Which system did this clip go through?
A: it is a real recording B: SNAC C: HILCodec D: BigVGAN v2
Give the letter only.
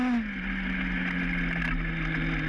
A